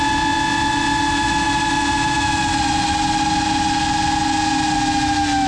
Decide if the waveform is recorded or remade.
recorded